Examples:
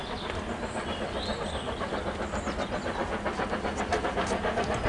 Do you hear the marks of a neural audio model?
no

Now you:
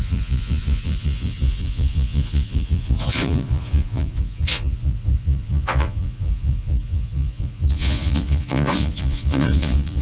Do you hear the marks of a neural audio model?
yes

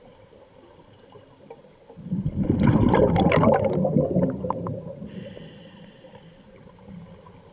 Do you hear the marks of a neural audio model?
no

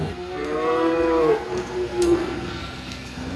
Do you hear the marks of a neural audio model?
yes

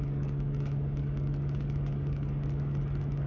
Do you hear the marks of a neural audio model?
yes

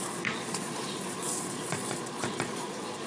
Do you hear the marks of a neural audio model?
yes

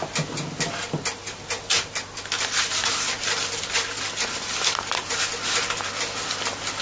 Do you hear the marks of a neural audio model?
no